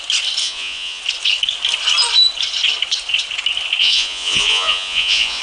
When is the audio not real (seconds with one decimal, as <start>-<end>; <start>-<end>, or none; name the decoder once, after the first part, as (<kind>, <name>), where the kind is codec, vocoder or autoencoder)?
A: 0.4-1.0 (vocoder, Vocos); 3.8-5.4